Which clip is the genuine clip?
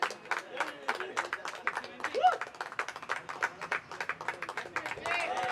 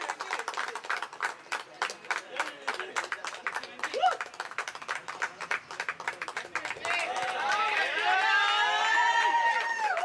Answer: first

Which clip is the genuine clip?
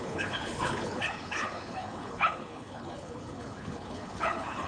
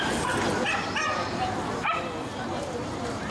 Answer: second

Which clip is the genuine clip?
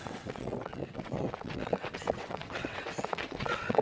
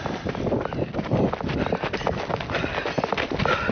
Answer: second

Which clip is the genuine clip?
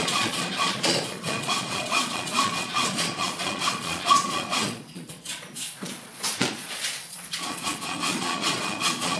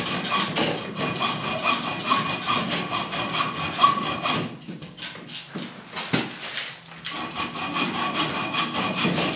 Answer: second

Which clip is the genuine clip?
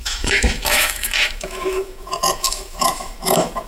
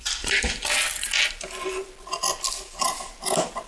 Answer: second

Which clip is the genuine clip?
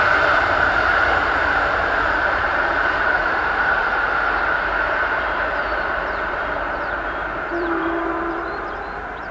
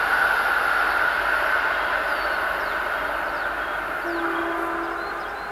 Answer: second